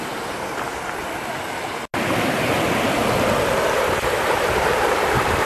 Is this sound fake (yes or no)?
no